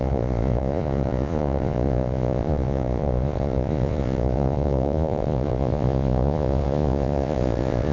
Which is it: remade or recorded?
remade